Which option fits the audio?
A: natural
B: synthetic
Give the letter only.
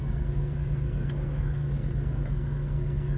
B